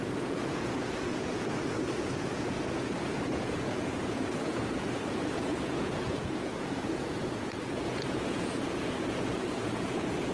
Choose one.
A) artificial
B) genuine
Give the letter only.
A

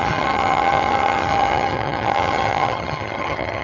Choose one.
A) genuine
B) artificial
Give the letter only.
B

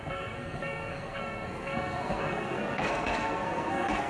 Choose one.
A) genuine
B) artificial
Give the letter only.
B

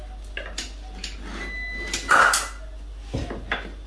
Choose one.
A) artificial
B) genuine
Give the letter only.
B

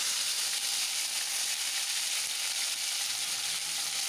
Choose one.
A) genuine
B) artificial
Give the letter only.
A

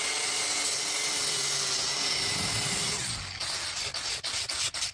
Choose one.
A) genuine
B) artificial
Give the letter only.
A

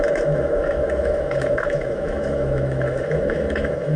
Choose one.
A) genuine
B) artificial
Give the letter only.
B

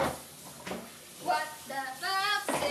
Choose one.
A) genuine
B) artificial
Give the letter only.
A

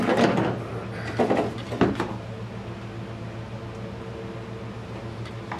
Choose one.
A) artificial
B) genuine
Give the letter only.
B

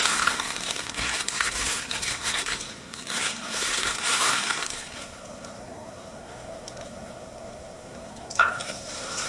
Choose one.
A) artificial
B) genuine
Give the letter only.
A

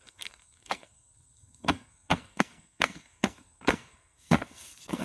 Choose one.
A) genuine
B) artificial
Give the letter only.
B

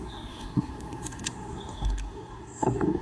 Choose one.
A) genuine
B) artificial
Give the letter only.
B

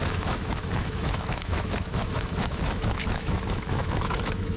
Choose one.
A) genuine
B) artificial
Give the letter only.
B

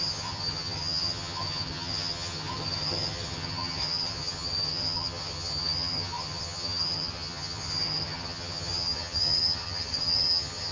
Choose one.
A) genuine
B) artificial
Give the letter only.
B